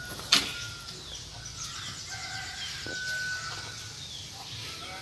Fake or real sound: real